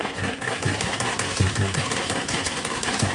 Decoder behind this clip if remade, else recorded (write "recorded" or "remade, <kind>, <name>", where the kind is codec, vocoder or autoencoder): remade, codec, SNAC